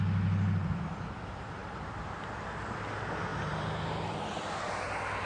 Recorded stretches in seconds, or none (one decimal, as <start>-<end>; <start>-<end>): 0.0-5.3

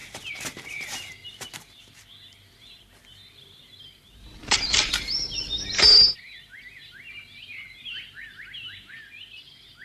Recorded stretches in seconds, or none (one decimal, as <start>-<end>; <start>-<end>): 1.1-4.4; 6.1-9.8

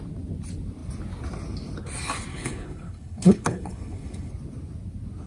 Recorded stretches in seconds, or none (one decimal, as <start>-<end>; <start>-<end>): 0.0-2.3; 4.3-5.3

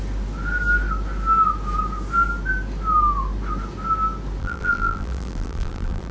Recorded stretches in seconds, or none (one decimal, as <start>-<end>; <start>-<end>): 0.0-4.4

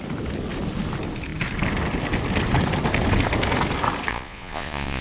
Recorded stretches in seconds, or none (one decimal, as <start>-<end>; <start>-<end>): 0.0-4.1

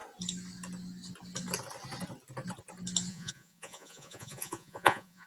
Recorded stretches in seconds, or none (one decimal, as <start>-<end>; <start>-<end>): 0.0-3.1